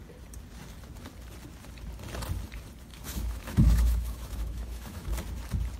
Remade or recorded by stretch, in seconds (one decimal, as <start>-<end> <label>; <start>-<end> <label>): 0.0-2.9 recorded; 2.9-5.1 remade; 5.1-5.8 recorded

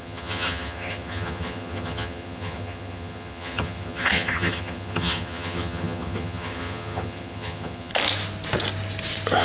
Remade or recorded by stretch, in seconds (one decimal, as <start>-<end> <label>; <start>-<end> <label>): 0.0-7.9 remade; 7.9-9.4 recorded

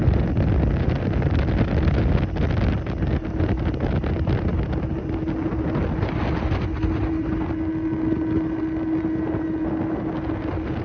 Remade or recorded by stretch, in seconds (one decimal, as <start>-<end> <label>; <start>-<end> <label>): 0.0-10.8 recorded

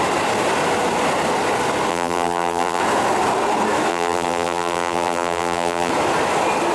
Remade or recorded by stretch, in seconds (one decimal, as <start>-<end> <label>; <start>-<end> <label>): 0.0-1.9 recorded; 1.9-2.8 remade; 2.8-3.9 recorded; 3.9-5.9 remade; 5.9-6.7 recorded

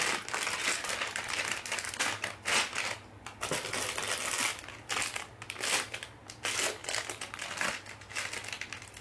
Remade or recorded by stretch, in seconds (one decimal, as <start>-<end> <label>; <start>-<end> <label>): 0.0-9.0 recorded